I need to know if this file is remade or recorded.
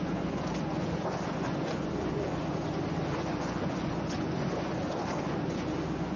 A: remade